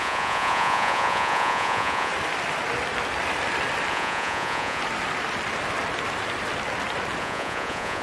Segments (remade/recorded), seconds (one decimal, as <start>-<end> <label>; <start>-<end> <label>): 0.0-2.1 remade; 2.1-3.9 recorded; 3.9-4.8 remade; 4.8-7.2 recorded; 7.2-8.0 remade